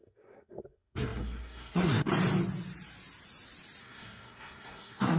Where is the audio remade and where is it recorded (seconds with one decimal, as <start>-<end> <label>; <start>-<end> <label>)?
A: 0.0-2.1 remade; 2.1-3.8 recorded; 3.8-5.2 remade